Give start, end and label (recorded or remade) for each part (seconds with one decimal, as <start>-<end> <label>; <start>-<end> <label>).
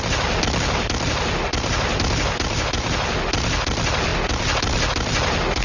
0.0-5.6 recorded